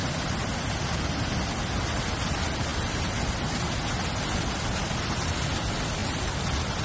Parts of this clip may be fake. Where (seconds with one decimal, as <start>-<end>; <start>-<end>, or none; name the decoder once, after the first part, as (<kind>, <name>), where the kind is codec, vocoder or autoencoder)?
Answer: none